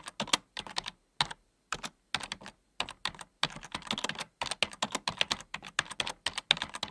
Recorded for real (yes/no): yes